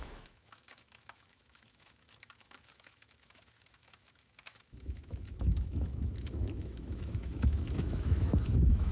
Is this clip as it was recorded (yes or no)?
no